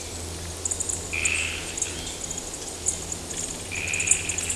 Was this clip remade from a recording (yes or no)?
no